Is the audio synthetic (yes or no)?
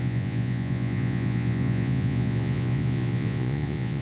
yes